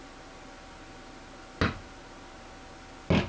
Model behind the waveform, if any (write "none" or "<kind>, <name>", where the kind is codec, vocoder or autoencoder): none